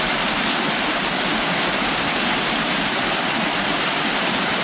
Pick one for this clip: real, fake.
real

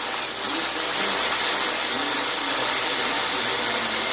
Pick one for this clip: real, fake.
real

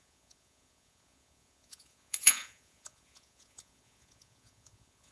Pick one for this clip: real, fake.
fake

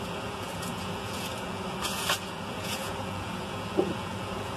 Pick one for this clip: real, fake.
fake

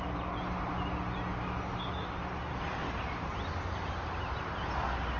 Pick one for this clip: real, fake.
real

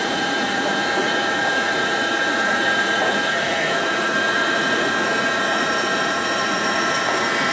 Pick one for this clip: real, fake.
fake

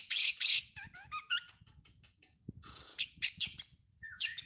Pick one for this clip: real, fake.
fake